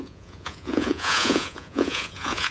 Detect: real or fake fake